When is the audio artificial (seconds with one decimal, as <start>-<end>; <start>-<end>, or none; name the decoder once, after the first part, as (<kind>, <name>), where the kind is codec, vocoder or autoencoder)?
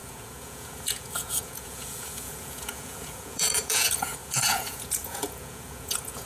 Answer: 0.0-6.3 (vocoder, Vocos)